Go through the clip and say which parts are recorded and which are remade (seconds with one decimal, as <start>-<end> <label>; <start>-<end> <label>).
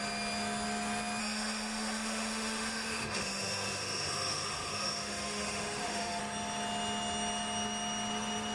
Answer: 0.0-1.2 recorded; 1.2-6.2 remade; 6.2-8.5 recorded